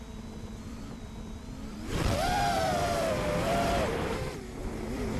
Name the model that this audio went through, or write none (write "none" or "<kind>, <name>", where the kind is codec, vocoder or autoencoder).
vocoder, BigVGAN v2